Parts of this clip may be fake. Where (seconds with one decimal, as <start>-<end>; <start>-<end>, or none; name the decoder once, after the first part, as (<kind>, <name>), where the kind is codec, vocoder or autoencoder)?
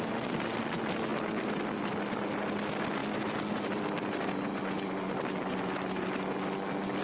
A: none